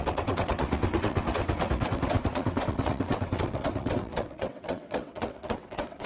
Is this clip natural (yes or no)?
no